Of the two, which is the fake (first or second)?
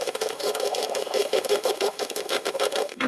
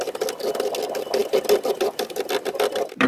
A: first